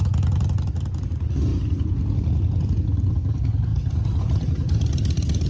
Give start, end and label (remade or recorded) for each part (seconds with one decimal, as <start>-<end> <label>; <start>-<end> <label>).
0.0-5.5 recorded